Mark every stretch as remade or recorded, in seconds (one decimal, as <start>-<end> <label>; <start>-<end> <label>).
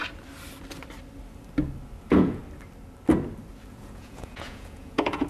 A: 0.0-2.0 recorded; 2.0-2.4 remade; 2.4-3.7 recorded; 3.7-5.3 remade